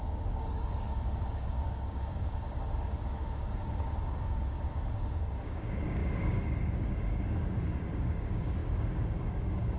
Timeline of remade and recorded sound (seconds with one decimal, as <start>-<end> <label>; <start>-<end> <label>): 0.0-9.8 remade